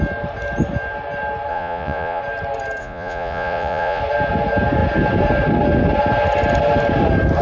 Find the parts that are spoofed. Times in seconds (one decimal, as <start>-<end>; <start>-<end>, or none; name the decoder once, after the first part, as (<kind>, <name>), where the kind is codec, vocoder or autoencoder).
1.5-2.2 (vocoder, Vocos); 2.8-4.0